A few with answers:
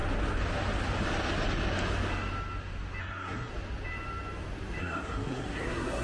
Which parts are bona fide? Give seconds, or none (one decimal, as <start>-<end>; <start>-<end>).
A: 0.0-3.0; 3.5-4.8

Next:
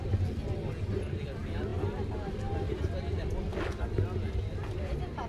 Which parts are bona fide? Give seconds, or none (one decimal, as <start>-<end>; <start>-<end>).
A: 0.0-5.3

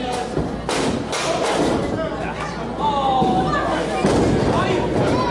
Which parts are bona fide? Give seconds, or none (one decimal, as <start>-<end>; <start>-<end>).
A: 0.0-5.3